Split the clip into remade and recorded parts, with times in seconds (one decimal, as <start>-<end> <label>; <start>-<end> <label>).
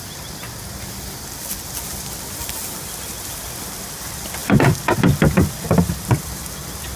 0.0-4.4 recorded; 4.4-7.0 remade